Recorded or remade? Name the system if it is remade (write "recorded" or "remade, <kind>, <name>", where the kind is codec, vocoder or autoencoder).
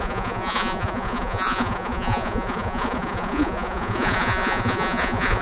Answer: remade, vocoder, Vocos